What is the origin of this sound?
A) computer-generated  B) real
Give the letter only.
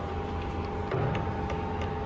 B